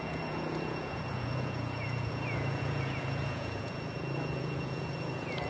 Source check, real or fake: fake